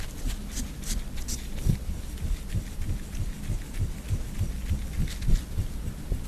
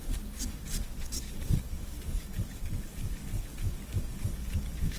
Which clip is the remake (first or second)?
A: second